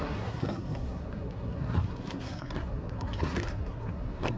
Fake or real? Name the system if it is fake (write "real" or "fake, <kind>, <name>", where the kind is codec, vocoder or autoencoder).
fake, codec, SNAC